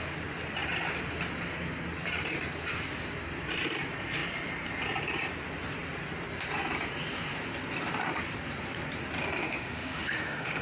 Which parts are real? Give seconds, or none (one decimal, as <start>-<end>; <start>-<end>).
0.0-9.4